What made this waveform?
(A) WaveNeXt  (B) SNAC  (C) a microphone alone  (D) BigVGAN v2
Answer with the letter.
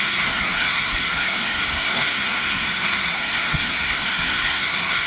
B